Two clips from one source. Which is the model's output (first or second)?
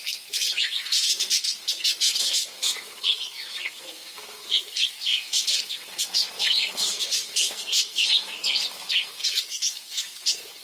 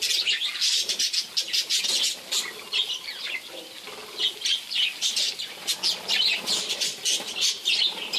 first